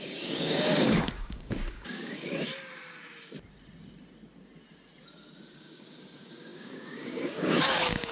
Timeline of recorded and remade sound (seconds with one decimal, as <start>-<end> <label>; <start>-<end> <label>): 0.0-2.5 remade; 2.5-5.5 recorded; 5.5-8.1 remade